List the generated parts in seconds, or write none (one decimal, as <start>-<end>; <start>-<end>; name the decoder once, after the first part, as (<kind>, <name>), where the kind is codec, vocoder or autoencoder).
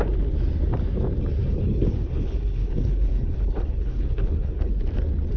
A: 1.5-4.7 (codec, HILCodec)